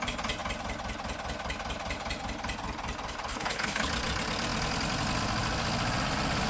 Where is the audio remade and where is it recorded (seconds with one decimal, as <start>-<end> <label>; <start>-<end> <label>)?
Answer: 0.0-3.3 recorded; 3.3-3.9 remade; 3.9-6.5 recorded